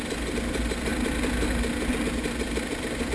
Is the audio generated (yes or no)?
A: no